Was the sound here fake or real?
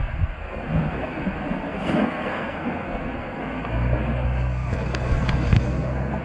fake